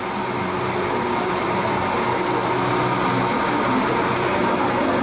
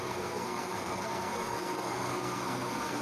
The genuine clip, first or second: first